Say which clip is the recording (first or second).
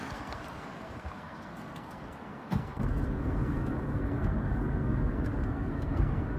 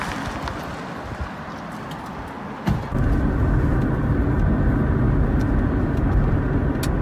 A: second